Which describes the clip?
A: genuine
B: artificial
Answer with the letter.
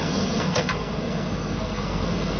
B